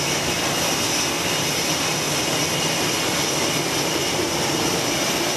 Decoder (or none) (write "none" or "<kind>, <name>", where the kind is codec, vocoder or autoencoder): none